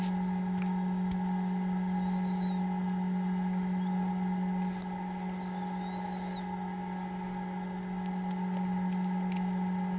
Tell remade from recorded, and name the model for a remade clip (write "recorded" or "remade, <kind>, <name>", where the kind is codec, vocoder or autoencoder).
recorded